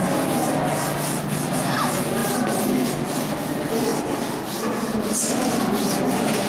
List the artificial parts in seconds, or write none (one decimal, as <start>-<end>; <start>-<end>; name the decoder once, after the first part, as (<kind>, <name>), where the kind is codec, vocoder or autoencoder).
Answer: none